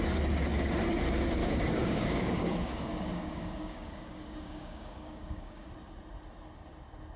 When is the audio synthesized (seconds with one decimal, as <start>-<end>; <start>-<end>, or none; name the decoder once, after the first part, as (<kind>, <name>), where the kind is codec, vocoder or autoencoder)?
1.4-5.7 (codec, DAC)